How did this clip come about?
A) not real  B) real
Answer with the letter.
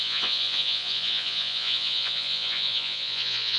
A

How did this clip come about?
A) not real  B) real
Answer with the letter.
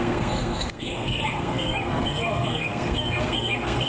A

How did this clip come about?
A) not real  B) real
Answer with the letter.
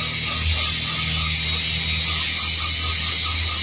B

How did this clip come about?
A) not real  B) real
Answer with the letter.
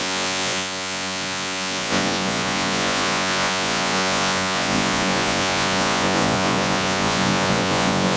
A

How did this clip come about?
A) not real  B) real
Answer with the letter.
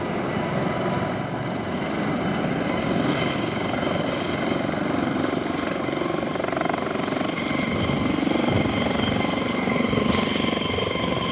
B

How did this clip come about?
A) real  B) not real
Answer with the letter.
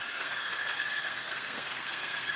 B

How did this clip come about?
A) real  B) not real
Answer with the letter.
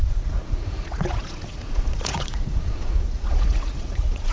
B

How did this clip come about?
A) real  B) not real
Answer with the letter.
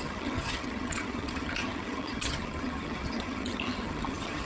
B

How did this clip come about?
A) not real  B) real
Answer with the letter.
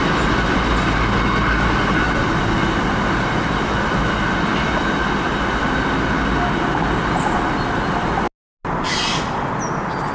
B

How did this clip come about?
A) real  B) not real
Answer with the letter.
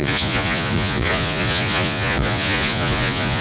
B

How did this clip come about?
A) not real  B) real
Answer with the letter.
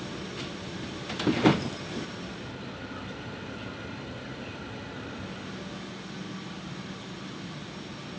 B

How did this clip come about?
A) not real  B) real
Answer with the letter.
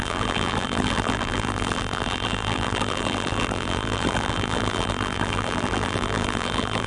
A